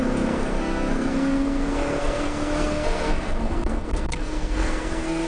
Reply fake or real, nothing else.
fake